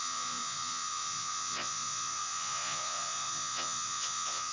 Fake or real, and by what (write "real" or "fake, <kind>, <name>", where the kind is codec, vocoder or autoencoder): fake, vocoder, Vocos